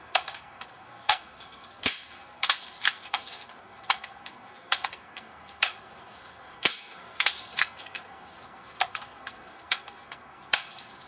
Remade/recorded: remade